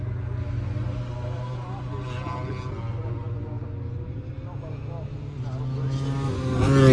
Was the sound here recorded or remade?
recorded